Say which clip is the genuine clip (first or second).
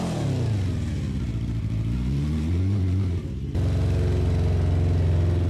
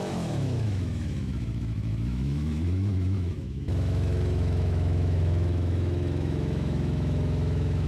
first